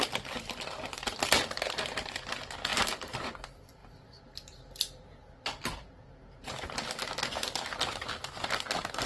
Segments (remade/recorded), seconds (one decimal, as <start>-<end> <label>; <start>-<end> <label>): 0.0-9.1 recorded